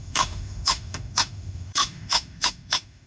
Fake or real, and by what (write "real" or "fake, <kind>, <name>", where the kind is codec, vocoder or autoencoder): fake, autoencoder, DAC-VAE